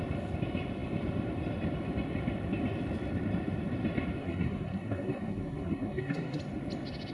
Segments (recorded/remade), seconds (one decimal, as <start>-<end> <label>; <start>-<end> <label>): 0.0-4.2 recorded; 4.2-6.4 remade; 6.4-7.1 recorded